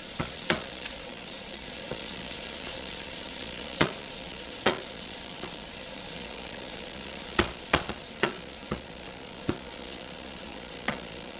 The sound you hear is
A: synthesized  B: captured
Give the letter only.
A